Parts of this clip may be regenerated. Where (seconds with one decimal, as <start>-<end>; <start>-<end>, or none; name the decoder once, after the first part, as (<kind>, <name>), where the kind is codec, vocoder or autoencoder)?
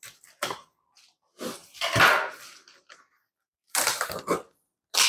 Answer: none